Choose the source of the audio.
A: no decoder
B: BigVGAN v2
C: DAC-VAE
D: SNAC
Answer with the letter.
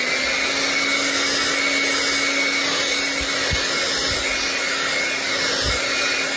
A